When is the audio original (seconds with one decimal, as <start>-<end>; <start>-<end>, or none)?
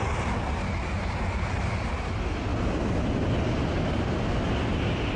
0.0-5.2